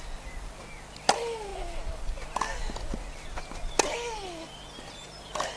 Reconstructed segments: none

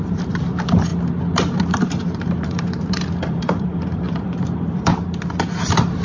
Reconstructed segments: 0.0-0.9 (vocoder, BigVGAN v2); 1.7-4.9; 5.6-6.0

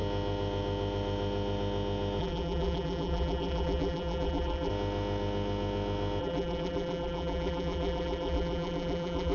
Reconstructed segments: 2.2-4.7 (vocoder, BigVGAN v2); 6.2-9.3

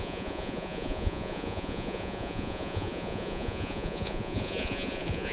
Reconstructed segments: 0.0-5.3 (vocoder, Vocos)

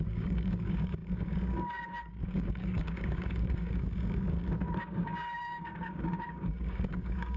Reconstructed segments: 0.0-7.4 (codec, DAC)

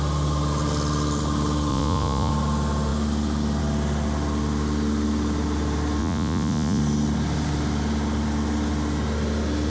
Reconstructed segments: 1.7-2.3 (vocoder, Vocos); 6.0-6.8

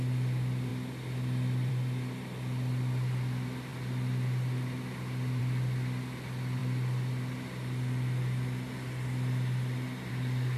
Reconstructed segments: none